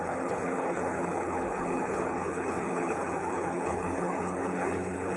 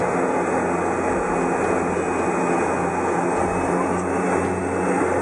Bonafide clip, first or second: second